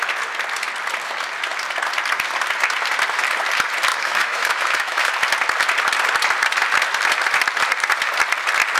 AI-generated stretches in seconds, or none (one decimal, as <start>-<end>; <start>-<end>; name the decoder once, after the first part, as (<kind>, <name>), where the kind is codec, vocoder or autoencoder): 3.9-5.1 (autoencoder, DAC-VAE)